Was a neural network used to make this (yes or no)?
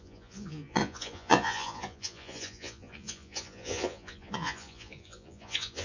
yes